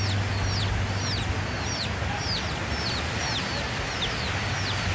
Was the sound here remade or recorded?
recorded